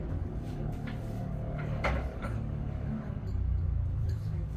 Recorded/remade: remade